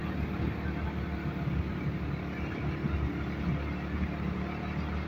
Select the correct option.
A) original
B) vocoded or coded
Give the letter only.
A